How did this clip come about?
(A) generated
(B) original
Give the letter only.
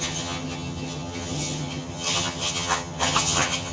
A